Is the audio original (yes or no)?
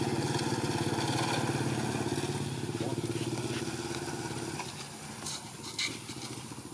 yes